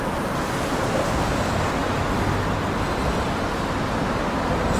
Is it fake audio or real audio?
real